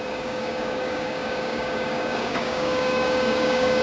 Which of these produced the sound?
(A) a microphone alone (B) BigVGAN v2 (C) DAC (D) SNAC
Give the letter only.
C